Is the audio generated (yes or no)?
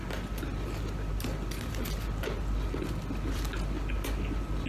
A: no